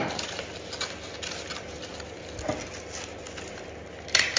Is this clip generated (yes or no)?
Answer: no